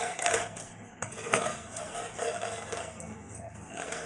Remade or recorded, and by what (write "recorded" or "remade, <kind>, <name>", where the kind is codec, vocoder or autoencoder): remade, codec, SNAC